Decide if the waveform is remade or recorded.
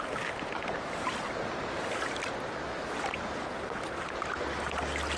recorded